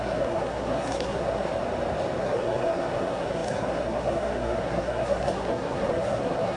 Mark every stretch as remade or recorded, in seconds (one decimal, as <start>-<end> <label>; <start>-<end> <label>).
0.0-1.5 remade; 1.5-2.2 recorded; 2.2-6.6 remade